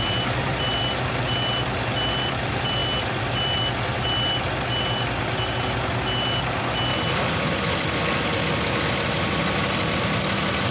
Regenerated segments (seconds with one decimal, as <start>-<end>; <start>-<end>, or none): none

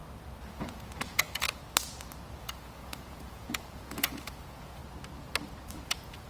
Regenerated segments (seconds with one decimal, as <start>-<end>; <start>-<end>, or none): 0.5-1.6; 2.4-4.8; 5.7-6.3

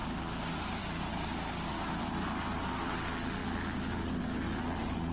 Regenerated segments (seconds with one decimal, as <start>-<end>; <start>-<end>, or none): none

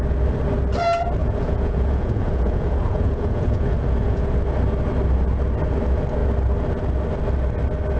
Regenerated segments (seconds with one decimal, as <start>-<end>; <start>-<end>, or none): 1.2-4.4